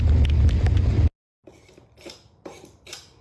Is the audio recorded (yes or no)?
yes